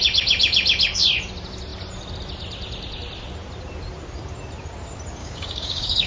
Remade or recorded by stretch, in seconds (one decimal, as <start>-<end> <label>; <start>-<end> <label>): 0.0-5.2 recorded; 5.2-6.1 remade